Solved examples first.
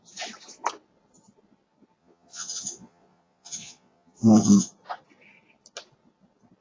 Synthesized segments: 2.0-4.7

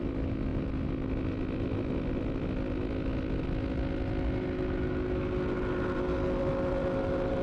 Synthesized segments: none

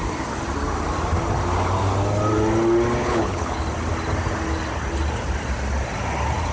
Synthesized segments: 3.0-3.6

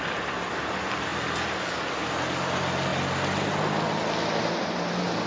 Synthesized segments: none

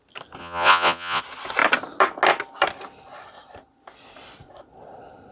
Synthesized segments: 0.4-1.2

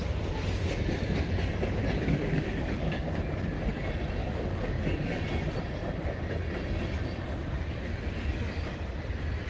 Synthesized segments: 1.8-3.2; 4.2-5.2

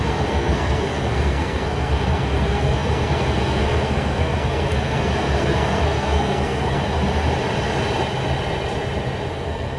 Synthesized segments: 0.0-6.8; 9.3-9.8